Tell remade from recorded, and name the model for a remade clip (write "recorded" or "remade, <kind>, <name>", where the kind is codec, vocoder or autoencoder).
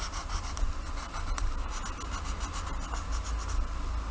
recorded